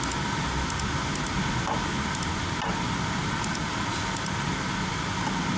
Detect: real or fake real